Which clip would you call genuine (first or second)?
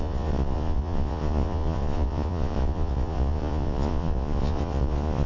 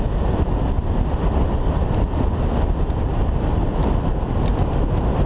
second